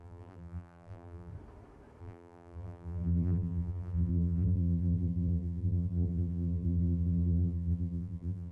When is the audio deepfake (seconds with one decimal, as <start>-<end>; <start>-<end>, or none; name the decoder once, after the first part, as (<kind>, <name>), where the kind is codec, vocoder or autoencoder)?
0.0-1.3 (vocoder, BigVGAN v2); 2.0-8.5